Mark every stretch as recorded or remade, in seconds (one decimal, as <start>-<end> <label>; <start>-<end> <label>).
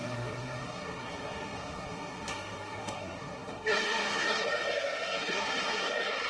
0.0-6.3 remade